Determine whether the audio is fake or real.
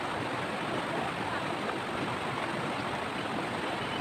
real